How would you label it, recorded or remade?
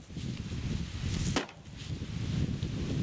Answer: recorded